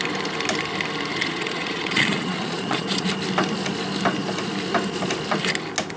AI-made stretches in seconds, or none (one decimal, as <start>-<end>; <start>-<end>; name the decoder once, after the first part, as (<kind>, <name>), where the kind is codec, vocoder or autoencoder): 1.1-3.1 (vocoder, Vocos)